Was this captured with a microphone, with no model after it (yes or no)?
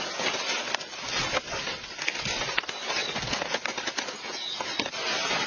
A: yes